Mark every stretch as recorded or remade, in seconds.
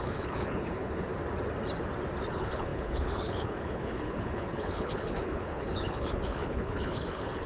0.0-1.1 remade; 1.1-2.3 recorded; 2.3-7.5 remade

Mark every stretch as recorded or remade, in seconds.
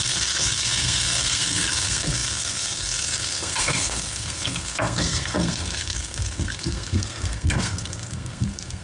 0.0-8.8 remade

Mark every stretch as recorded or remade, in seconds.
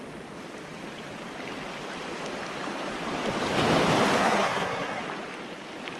0.0-4.2 recorded; 4.2-5.0 remade; 5.0-6.0 recorded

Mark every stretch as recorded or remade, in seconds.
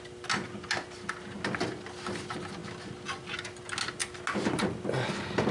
0.0-5.5 recorded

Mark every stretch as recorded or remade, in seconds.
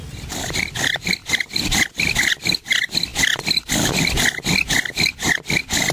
0.0-5.9 recorded